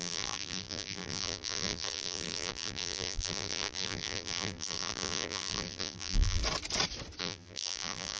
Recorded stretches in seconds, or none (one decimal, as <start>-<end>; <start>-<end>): 6.4-7.2